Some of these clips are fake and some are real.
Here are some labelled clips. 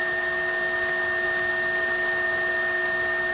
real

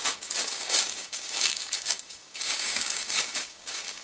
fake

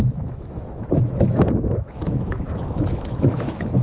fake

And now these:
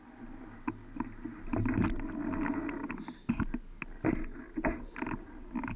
real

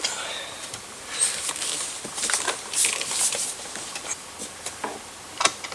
real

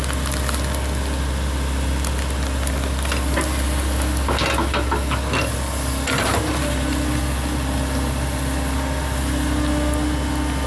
real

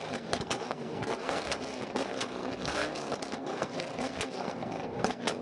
fake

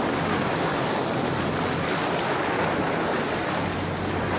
real